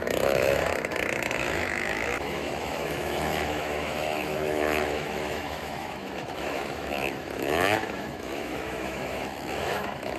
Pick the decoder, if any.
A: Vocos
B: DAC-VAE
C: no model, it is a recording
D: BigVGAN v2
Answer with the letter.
B